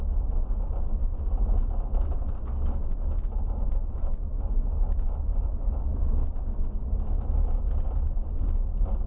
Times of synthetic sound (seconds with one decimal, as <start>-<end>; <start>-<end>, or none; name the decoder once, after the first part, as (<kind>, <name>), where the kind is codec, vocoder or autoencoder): none